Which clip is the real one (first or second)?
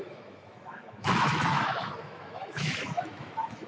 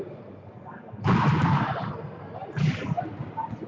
second